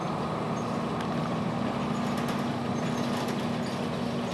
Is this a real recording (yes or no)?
yes